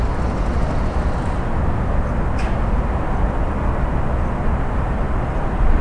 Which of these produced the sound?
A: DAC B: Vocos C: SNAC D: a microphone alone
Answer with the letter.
D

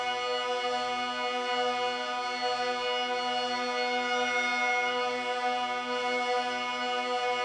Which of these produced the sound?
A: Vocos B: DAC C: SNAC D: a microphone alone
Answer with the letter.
D